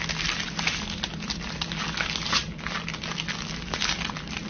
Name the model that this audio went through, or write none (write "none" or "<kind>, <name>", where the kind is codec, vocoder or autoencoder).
none